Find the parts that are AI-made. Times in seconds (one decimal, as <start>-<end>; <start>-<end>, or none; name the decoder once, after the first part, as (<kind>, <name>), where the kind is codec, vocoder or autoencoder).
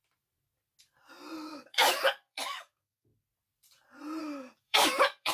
1.5-3.1 (codec, DAC); 4.2-5.3